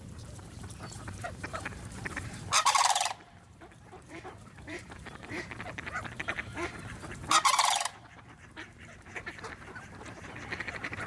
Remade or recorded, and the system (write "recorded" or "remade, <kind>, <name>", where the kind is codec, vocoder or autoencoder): remade, vocoder, BigVGAN v2